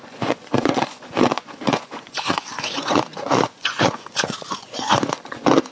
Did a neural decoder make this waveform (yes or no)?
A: yes